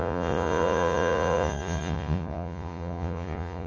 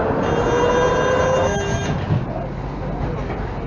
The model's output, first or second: first